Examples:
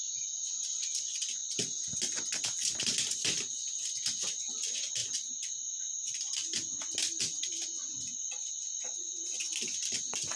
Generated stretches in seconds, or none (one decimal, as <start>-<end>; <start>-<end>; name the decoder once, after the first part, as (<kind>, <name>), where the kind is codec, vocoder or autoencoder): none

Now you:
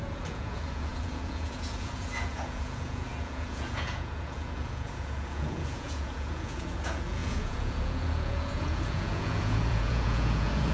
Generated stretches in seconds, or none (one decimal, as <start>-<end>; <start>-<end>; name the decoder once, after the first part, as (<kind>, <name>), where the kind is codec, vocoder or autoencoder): 0.0-10.7 (vocoder, Vocos)

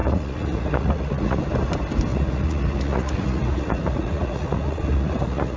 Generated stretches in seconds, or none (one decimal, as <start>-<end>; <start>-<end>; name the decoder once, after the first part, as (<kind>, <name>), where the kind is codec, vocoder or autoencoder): 0.0-1.4 (vocoder, Vocos); 2.1-5.6

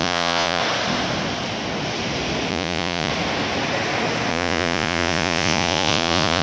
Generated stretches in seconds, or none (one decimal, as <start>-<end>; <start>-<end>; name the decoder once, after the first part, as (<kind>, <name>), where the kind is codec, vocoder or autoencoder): 0.0-0.6 (vocoder, Vocos); 2.5-3.1; 4.3-6.4

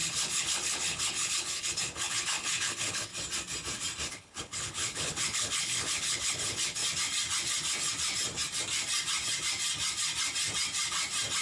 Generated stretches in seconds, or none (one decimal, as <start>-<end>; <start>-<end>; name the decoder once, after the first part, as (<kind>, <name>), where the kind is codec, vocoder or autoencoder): 0.0-3.1 (codec, HILCodec); 4.1-6.8